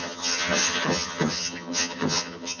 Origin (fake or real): fake